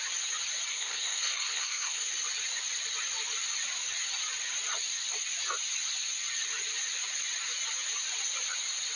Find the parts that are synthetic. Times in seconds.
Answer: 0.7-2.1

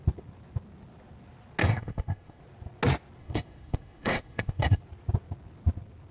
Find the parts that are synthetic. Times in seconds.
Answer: 1.6-2.4; 3.2-4.8

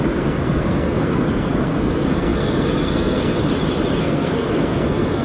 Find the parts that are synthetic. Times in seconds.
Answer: 0.0-3.3; 4.0-5.2

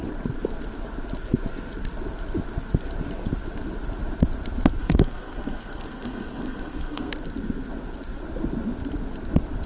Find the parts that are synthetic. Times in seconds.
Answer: 4.8-7.1

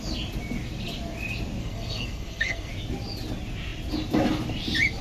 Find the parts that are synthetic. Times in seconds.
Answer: 1.6-2.7